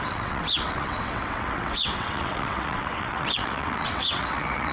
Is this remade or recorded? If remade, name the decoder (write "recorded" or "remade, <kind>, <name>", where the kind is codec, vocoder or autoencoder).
remade, vocoder, WaveNeXt